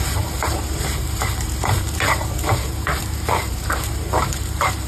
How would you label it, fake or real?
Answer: fake